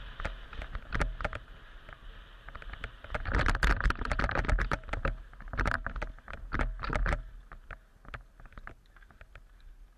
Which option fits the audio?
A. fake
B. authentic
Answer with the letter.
B